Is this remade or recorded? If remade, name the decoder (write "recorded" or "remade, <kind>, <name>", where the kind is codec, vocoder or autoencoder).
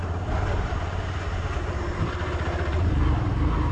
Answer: remade, vocoder, BigVGAN v2